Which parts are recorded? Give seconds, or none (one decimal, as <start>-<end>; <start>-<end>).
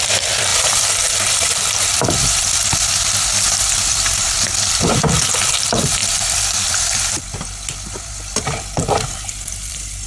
0.5-2.4; 6.0-7.4